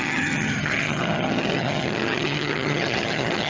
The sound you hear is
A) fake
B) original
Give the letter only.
A